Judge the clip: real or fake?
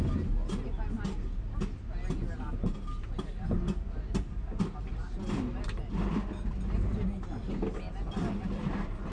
real